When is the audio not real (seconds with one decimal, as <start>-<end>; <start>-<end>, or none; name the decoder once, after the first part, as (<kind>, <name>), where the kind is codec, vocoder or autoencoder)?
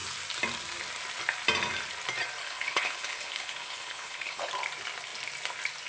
2.4-4.5 (codec, HILCodec)